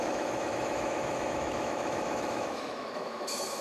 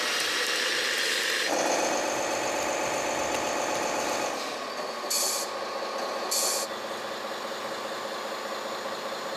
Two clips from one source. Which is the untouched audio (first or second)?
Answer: second